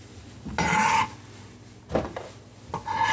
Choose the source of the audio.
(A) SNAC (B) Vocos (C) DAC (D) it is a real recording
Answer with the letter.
D